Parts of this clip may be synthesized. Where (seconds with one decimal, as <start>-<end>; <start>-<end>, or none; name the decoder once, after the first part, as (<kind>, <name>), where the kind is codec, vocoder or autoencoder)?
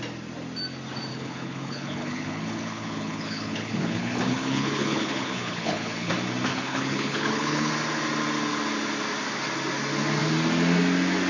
1.1-6.1 (codec, HILCodec); 6.5-7.7